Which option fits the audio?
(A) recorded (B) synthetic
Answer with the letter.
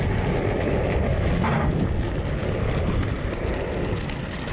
A